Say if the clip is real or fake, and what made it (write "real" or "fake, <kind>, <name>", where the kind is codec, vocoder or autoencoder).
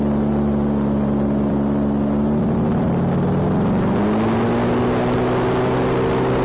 real